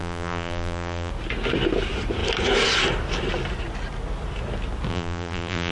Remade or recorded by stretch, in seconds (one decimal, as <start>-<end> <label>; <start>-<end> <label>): 0.0-1.1 remade; 1.1-4.9 recorded; 4.9-5.7 remade